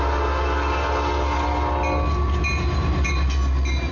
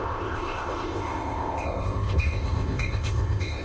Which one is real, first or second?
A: first